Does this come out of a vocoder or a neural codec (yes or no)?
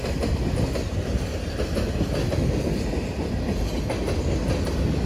no